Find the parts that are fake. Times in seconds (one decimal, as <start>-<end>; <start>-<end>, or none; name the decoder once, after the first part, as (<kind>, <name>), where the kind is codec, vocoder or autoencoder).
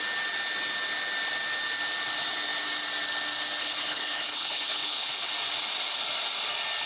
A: 3.6-5.3 (codec, HILCodec)